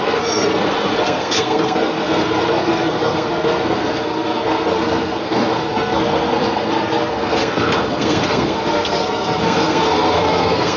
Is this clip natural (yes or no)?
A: no